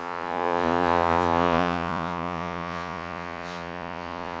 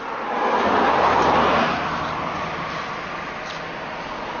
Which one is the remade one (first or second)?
first